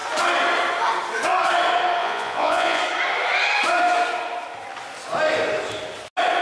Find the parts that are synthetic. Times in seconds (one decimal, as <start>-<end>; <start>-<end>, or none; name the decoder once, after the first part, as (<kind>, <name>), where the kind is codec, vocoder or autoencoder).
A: 2.0-2.8 (vocoder, Vocos)